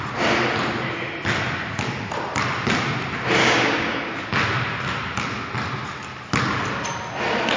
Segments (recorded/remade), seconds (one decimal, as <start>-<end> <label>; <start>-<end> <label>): 0.0-3.4 recorded; 3.4-4.2 remade; 4.2-7.6 recorded